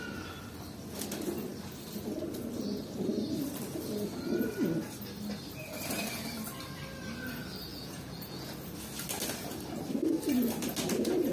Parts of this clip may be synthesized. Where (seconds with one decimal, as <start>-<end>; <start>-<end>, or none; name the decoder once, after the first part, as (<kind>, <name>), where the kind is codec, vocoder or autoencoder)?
7.7-8.5 (vocoder, Vocos)